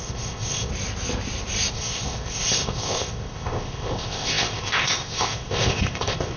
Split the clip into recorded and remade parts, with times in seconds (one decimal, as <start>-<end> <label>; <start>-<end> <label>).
0.0-0.7 remade; 0.7-1.7 recorded; 1.7-6.4 remade